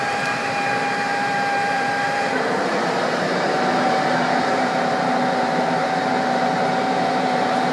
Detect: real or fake fake